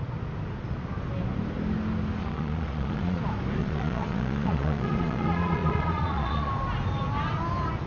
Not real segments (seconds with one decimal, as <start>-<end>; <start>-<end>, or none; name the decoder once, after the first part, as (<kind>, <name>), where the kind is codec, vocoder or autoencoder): 2.2-3.2 (vocoder, Vocos); 3.6-6.5